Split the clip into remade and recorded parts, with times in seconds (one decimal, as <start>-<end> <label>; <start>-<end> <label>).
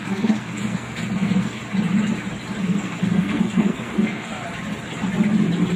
0.0-1.6 remade; 1.6-2.6 recorded; 2.6-4.3 remade; 4.3-5.8 recorded